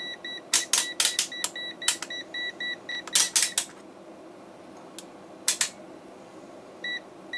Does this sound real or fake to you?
real